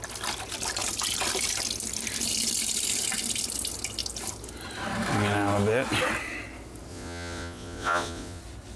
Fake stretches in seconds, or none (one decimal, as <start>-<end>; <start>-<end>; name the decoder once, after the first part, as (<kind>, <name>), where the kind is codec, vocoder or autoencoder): 6.9-8.4 (vocoder, Vocos)